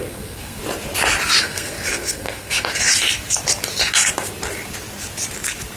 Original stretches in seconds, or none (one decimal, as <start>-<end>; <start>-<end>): 0.6-1.4; 2.9-5.8

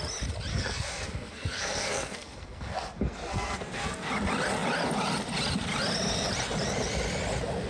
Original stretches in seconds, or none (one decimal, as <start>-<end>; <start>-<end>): 0.0-0.5; 4.1-7.7

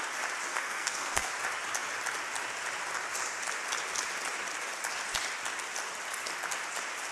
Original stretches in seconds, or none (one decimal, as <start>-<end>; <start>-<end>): 0.0-0.5; 1.3-7.1

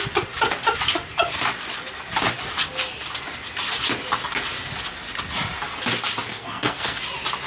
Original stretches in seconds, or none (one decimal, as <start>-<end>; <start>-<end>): 0.0-6.3; 7.0-7.5

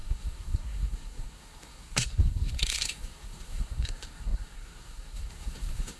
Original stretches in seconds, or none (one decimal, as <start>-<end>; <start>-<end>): none